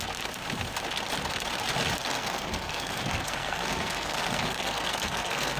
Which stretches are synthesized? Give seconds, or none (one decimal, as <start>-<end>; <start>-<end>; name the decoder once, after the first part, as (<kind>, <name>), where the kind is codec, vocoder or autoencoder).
2.0-5.6 (codec, SNAC)